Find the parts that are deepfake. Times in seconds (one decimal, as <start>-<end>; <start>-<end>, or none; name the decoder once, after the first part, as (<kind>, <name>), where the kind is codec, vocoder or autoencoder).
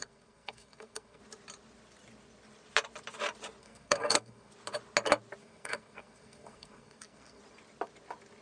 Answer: 0.0-1.2 (codec, SNAC); 3.6-4.5; 5.4-7.4